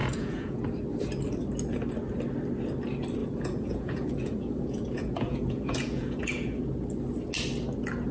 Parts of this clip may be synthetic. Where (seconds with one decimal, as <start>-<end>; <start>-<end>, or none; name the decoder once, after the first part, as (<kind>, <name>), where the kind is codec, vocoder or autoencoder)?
0.0-0.6 (vocoder, Vocos); 3.2-6.6